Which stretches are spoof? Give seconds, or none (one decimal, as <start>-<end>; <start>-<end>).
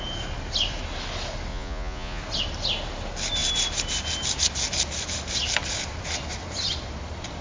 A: 1.5-2.2